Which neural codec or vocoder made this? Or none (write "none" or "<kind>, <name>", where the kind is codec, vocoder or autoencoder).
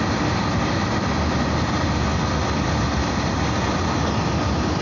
none